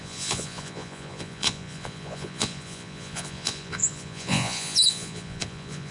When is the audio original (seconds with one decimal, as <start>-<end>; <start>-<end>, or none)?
none